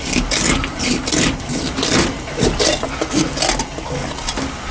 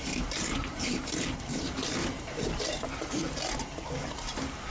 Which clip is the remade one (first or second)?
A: second